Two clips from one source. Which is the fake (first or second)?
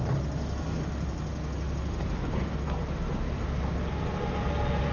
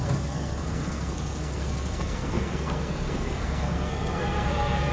second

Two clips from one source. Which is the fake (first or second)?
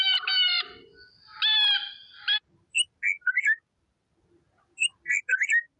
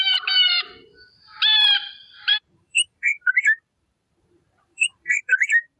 second